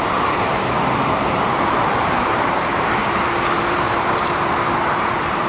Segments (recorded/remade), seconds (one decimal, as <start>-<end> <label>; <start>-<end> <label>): 0.0-3.0 remade; 3.0-3.7 recorded; 3.7-5.5 remade